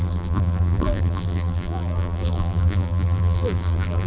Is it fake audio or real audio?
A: fake